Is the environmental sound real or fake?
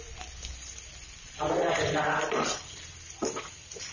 real